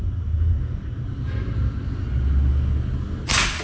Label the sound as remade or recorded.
recorded